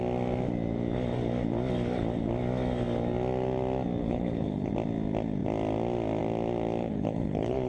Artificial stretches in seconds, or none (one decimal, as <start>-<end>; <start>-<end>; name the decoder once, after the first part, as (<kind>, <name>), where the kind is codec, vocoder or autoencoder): 4.0-4.7 (codec, HILCodec); 6.8-7.7